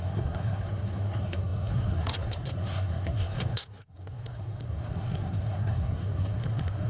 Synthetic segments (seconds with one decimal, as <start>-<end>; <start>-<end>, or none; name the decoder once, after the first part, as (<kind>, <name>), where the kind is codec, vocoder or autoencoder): 0.0-6.9 (codec, SNAC)